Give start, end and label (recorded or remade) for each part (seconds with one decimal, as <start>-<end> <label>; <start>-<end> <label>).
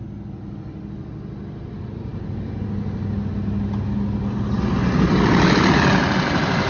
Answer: 0.0-6.7 recorded